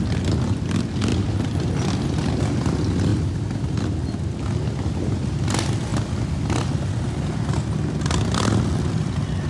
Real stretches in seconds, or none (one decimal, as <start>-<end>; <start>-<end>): 0.0-1.1; 2.4-9.5